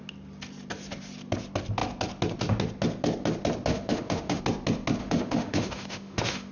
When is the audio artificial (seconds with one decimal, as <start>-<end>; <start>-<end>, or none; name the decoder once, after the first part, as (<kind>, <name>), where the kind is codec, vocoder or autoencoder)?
3.7-4.4 (autoencoder, DAC-VAE); 5.0-6.5